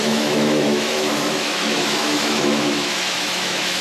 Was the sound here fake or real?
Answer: fake